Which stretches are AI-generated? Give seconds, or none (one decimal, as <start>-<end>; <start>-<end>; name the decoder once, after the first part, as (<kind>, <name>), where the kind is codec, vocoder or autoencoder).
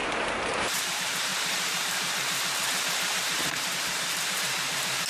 0.0-5.1 (vocoder, BigVGAN v2)